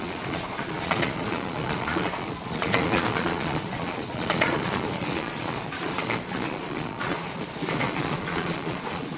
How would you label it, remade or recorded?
remade